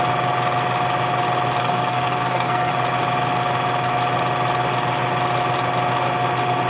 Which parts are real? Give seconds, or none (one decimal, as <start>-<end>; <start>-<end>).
0.0-1.6; 2.7-6.7